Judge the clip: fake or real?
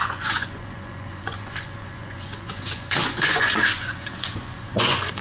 fake